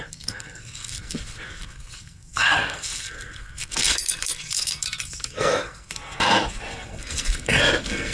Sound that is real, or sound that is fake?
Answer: fake